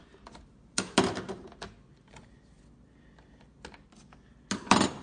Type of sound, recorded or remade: recorded